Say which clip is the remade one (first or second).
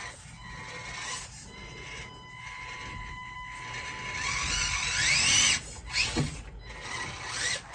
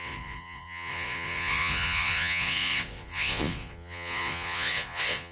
second